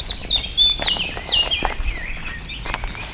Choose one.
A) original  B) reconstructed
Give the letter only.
A